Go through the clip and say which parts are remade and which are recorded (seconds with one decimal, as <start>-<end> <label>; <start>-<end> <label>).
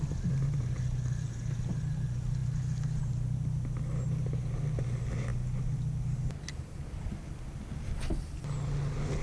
0.0-9.2 recorded